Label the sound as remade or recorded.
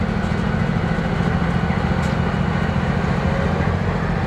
recorded